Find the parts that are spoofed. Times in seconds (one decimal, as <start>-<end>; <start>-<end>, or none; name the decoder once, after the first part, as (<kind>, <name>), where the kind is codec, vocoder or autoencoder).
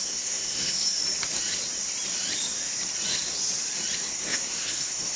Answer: 0.0-1.0 (codec, SNAC); 4.1-5.2